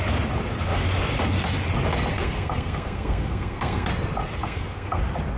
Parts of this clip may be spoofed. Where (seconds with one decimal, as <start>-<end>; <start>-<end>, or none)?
2.1-3.9; 4.4-5.0